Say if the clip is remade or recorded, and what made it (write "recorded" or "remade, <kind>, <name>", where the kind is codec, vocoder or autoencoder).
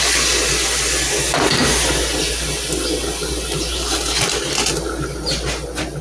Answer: recorded